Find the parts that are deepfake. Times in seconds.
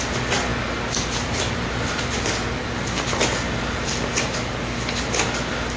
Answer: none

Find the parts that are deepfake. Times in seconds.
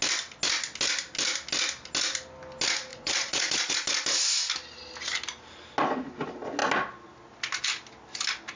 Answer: 2.9-3.7 (vocoder, Vocos)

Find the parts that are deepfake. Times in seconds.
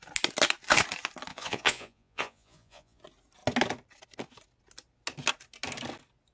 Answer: 1.3-3.0 (vocoder, Vocos)